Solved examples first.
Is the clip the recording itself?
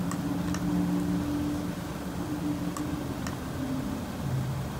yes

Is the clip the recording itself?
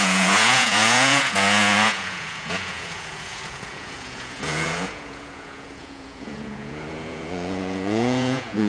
no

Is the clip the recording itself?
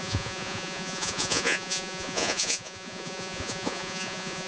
no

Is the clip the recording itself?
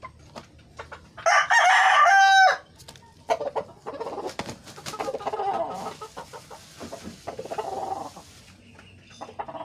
yes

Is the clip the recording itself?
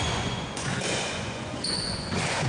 no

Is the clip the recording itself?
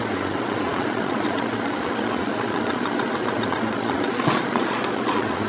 no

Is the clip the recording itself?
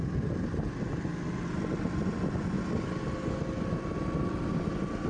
yes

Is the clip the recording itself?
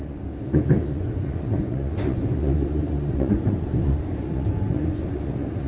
no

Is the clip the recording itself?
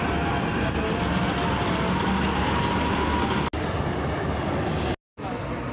yes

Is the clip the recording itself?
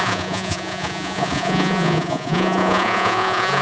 no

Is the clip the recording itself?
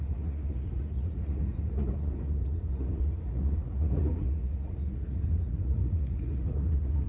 no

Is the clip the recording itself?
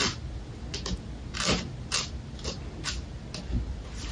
yes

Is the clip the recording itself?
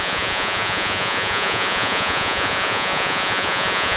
no